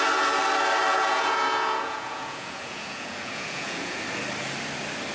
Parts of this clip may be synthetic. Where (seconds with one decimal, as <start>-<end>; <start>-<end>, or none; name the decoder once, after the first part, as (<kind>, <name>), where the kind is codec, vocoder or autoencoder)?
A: 0.9-4.0 (vocoder, Vocos)